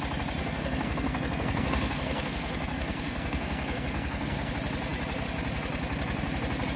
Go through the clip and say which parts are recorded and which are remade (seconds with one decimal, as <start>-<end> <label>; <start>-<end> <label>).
0.0-0.4 recorded; 0.4-4.5 remade; 4.5-6.8 recorded